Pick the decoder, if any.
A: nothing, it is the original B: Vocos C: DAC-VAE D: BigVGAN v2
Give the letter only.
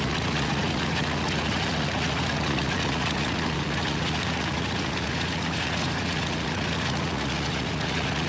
B